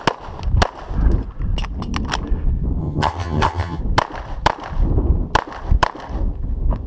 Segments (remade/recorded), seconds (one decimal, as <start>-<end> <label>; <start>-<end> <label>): 0.0-2.8 recorded; 2.8-3.8 remade; 3.8-6.9 recorded

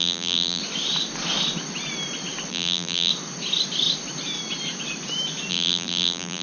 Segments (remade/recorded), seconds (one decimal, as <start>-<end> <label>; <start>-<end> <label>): 0.0-0.6 remade; 0.6-2.5 recorded; 2.5-3.1 remade; 3.1-5.5 recorded; 5.5-6.4 remade

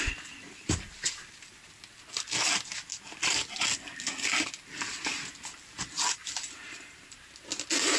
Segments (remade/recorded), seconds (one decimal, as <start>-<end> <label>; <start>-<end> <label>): 0.0-6.2 recorded; 6.2-7.2 remade; 7.2-8.0 recorded